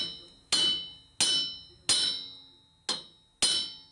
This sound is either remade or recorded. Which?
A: recorded